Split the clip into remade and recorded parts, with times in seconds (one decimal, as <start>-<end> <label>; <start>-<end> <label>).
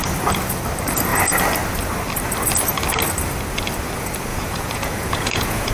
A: 0.0-4.3 recorded; 4.3-5.7 remade